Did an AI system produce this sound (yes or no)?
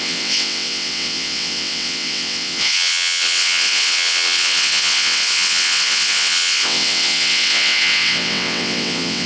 yes